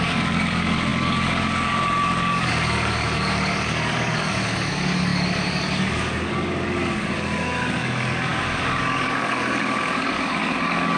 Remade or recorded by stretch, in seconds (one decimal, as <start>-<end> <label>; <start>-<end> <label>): 0.0-11.0 remade